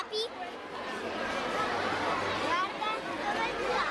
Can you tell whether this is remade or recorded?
recorded